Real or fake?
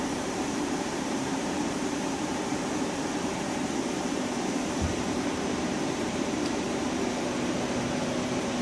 fake